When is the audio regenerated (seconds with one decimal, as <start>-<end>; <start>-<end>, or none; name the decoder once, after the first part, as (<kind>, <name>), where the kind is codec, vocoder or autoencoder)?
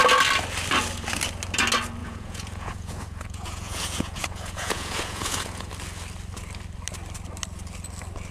2.0-5.7 (vocoder, Vocos)